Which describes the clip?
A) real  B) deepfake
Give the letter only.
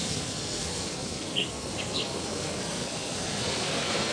B